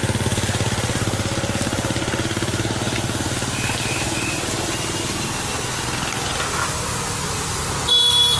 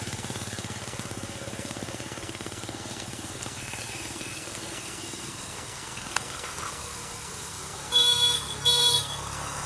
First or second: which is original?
first